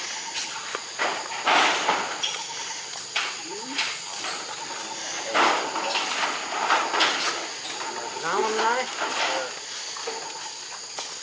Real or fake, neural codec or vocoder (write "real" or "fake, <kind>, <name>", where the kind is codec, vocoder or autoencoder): real